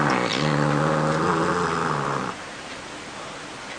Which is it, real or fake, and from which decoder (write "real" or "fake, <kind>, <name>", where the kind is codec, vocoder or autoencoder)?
real